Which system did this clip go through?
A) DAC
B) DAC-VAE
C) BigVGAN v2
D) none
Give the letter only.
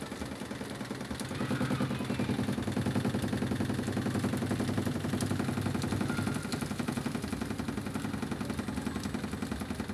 D